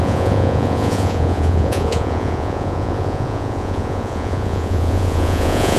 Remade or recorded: remade